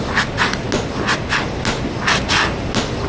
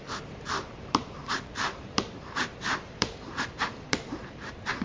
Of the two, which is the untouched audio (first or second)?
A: first